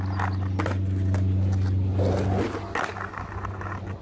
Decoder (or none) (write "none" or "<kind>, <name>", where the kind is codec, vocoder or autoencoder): none